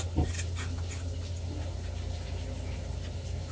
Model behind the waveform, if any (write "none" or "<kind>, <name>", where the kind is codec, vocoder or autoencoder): none